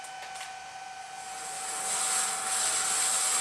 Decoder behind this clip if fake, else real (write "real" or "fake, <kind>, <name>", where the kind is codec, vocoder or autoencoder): real